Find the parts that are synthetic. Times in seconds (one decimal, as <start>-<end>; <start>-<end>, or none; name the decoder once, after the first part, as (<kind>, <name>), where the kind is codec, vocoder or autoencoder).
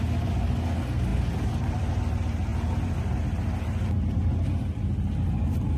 1.1-2.0 (vocoder, BigVGAN v2)